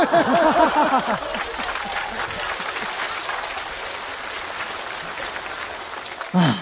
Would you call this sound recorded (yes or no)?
yes